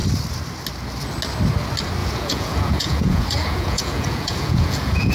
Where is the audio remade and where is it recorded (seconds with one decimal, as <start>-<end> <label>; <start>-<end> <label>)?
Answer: 0.0-2.0 recorded; 2.0-5.1 remade